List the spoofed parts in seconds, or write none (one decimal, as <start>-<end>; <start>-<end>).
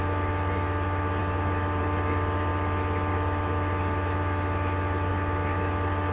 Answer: none